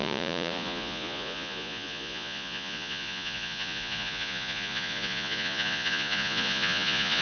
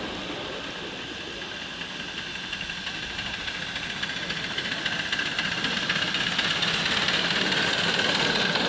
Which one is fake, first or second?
first